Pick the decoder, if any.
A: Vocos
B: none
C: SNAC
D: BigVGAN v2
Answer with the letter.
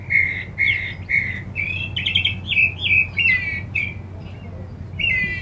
B